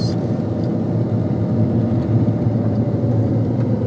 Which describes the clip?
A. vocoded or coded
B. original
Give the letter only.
B